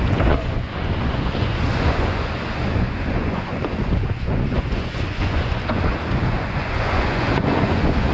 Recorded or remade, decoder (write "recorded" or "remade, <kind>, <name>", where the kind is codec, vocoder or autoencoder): remade, vocoder, Vocos